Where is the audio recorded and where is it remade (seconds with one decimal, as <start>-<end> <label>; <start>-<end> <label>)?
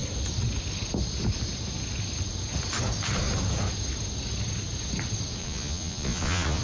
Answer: 0.0-5.4 recorded; 5.4-6.6 remade